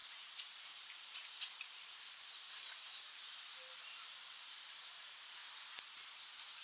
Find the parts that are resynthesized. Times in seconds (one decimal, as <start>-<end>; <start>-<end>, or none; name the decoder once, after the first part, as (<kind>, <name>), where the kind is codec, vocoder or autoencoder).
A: 0.0-5.4 (vocoder, BigVGAN v2)